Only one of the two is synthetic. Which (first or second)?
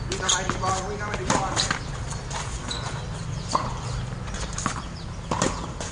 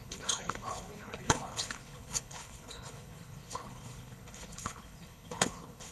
second